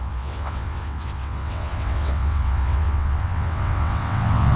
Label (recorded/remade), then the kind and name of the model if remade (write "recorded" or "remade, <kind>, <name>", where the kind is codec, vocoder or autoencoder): remade, vocoder, WaveNeXt